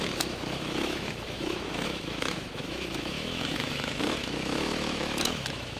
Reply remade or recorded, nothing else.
remade